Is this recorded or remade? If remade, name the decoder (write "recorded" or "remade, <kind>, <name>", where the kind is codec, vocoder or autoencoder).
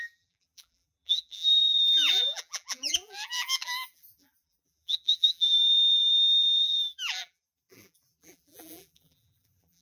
remade, vocoder, BigVGAN v2